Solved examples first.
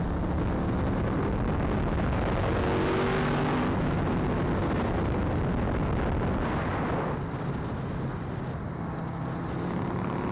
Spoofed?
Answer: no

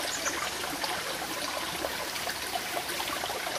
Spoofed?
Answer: no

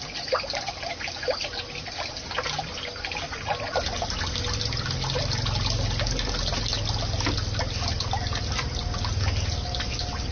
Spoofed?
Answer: no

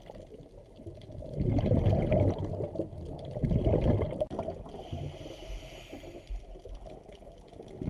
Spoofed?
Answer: no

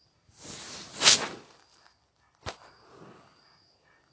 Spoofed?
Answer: no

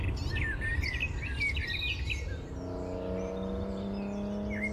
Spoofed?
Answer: no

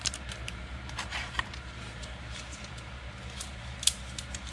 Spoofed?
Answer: yes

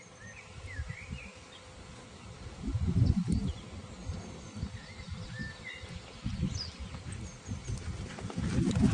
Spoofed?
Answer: no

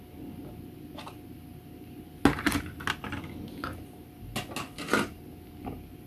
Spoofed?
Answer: no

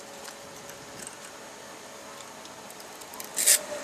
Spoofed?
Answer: yes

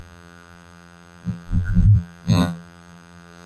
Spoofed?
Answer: yes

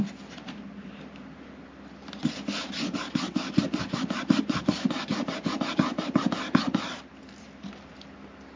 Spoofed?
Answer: yes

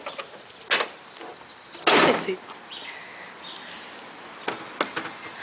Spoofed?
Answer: no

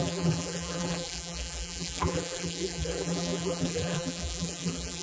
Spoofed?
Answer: yes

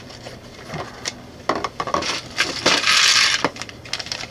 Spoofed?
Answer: no